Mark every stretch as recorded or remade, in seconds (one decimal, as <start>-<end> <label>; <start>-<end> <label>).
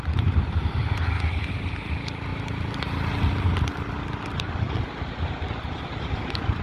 0.0-6.6 recorded